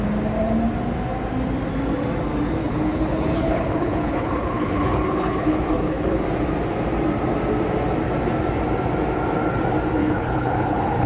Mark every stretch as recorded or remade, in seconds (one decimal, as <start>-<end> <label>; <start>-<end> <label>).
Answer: 0.0-2.6 recorded; 2.6-6.2 remade; 6.2-10.0 recorded; 10.0-11.1 remade